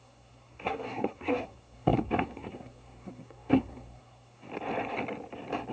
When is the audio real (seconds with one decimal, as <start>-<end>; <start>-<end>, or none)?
4.5-5.7